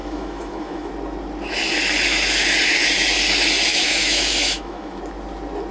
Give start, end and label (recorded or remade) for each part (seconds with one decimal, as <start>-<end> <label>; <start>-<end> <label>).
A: 0.0-0.9 remade; 0.9-3.7 recorded; 3.7-5.0 remade; 5.0-5.7 recorded